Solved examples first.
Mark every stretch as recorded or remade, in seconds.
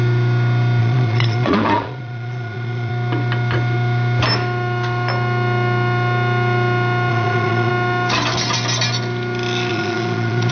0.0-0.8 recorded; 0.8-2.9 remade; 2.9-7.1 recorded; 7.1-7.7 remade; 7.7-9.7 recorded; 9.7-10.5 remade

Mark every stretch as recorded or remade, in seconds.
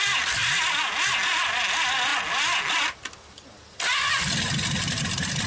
0.0-5.5 recorded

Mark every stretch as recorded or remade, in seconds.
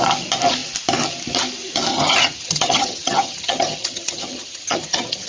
0.0-1.9 recorded; 1.9-5.3 remade